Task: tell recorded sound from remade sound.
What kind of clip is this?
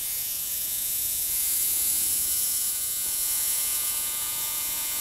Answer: remade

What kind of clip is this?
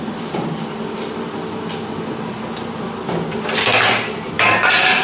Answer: recorded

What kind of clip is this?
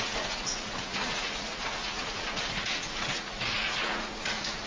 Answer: remade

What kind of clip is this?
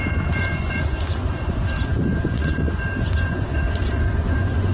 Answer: remade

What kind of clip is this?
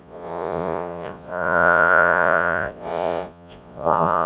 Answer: remade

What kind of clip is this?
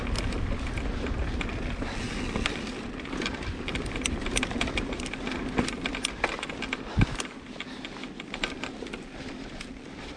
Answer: recorded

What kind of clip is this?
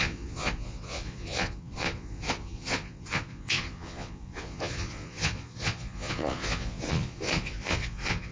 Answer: remade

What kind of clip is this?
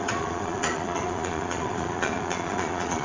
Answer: remade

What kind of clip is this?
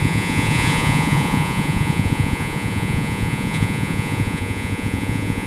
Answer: remade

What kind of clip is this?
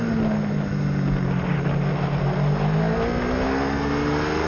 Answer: recorded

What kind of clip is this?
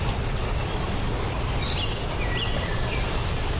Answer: recorded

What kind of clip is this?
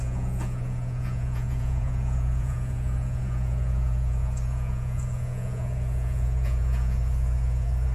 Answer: remade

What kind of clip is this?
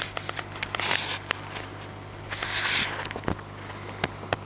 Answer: recorded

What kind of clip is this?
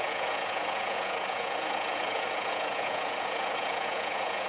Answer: remade